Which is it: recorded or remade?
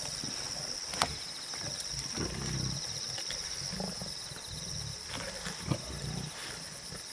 recorded